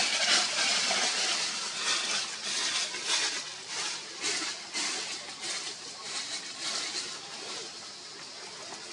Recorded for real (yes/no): yes